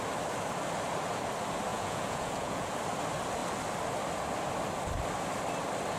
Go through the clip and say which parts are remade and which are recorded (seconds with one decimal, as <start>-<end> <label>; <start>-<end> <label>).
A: 0.0-1.7 recorded; 1.7-2.7 remade; 2.7-6.0 recorded

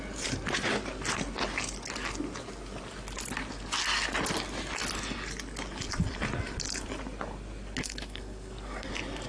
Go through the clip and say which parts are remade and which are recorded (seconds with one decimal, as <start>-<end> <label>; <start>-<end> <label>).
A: 0.0-7.8 recorded; 7.8-8.9 remade; 8.9-9.3 recorded